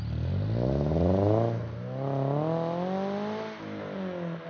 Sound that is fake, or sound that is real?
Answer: real